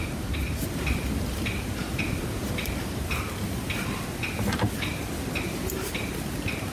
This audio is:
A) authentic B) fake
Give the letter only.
A